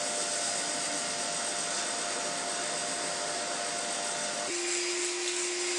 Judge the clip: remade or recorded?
recorded